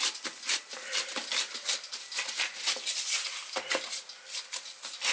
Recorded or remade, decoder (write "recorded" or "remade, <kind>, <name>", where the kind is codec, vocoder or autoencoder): recorded